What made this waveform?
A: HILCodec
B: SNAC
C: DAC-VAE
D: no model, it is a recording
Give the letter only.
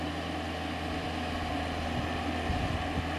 D